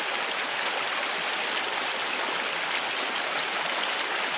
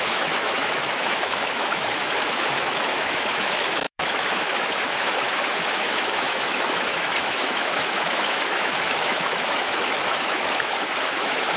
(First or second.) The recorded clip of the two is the first